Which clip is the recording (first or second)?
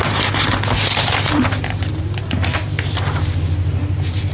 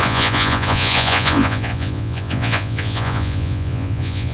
first